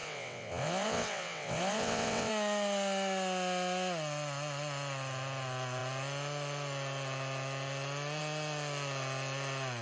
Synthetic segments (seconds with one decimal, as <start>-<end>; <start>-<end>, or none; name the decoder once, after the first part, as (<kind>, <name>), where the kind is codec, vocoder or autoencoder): 0.0-2.3 (vocoder, WaveNeXt)